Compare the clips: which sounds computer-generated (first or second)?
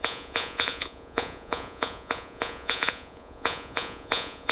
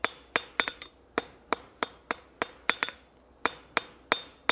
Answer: first